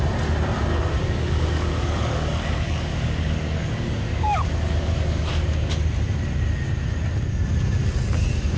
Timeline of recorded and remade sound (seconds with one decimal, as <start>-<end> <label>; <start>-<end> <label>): 0.0-1.0 recorded; 1.0-5.7 remade; 5.7-8.6 recorded

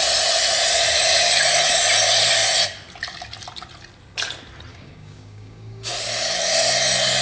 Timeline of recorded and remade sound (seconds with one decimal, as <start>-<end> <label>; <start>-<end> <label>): 0.0-4.7 recorded; 4.7-5.9 remade; 5.9-7.2 recorded

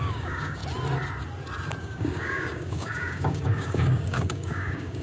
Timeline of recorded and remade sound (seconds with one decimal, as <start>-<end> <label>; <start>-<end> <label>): 0.0-0.6 remade; 0.6-1.8 recorded; 1.8-5.0 remade

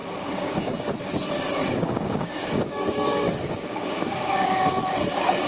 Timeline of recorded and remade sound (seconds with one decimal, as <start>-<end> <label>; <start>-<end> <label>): 0.0-0.7 remade; 0.7-1.6 recorded; 1.6-4.9 remade; 4.9-5.5 recorded

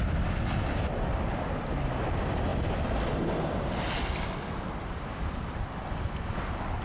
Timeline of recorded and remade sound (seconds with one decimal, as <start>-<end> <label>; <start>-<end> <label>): 0.0-6.8 recorded

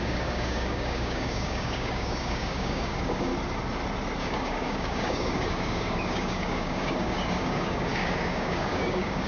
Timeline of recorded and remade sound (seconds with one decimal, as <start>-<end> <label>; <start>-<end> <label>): 0.0-3.3 remade; 3.3-4.2 recorded; 4.2-9.3 remade